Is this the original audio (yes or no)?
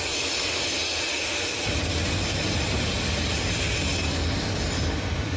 yes